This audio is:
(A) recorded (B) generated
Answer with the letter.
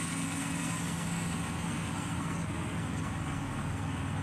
B